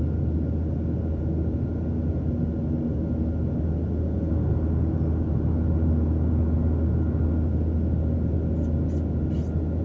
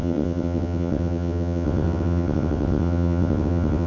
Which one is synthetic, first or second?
second